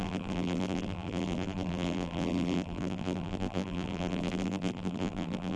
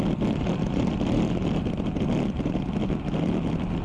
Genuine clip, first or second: second